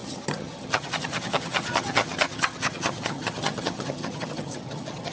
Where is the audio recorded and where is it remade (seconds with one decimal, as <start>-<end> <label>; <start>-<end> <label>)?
0.0-5.1 remade